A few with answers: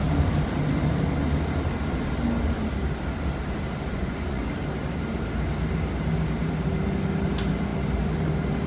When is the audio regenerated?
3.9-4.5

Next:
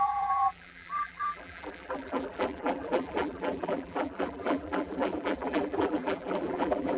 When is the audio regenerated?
0.0-7.0

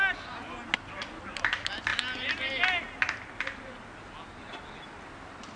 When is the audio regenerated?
none

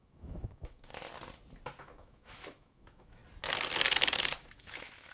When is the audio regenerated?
0.0-0.9; 1.8-3.2; 4.5-5.1

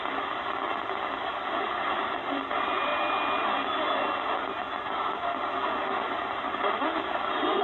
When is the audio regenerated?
0.0-2.9; 6.4-7.6